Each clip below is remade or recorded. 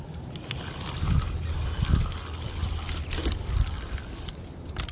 recorded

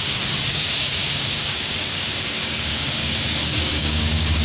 remade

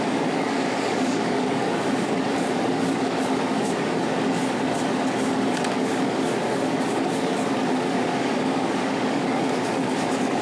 remade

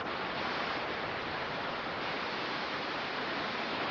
recorded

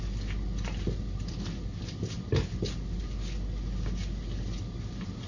recorded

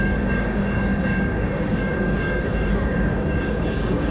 remade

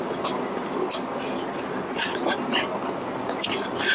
recorded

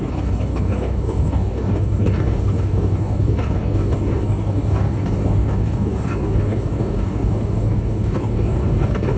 remade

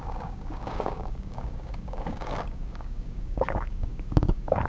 remade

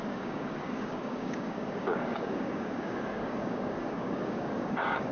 remade